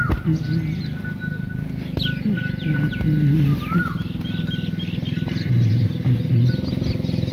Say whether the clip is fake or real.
real